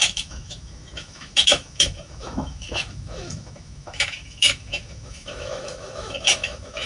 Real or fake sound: fake